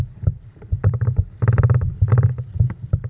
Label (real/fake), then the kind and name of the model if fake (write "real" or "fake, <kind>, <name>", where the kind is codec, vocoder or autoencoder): real